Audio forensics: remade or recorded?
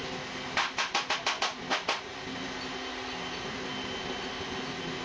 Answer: recorded